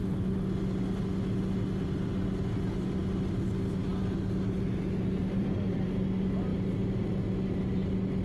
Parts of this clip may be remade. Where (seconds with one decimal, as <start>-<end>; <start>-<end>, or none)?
5.2-5.9